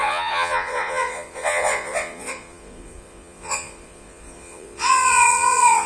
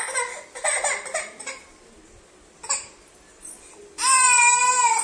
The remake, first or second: first